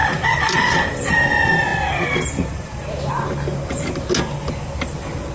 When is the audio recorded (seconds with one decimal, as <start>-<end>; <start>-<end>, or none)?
1.1-5.3